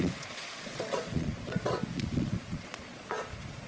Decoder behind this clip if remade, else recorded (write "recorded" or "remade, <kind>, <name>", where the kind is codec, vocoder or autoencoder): remade, vocoder, Vocos